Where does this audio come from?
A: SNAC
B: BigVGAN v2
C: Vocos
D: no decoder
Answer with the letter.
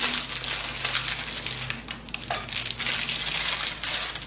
D